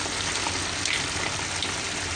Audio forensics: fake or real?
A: real